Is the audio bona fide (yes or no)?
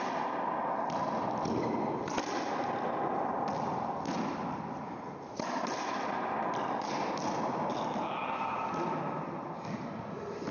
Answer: yes